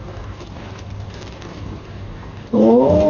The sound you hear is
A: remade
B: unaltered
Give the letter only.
A